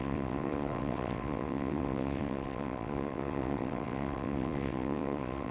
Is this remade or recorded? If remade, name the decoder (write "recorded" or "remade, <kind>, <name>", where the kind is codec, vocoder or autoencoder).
remade, vocoder, WaveNeXt